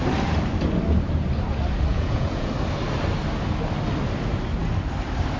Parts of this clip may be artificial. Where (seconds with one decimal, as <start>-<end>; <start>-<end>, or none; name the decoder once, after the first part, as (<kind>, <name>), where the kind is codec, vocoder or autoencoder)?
1.9-2.5 (vocoder, Vocos)